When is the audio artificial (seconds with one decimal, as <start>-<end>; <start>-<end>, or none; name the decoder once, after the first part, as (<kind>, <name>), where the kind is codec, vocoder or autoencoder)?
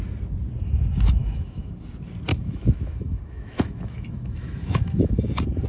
1.2-1.7 (autoencoder, DAC-VAE); 2.3-5.1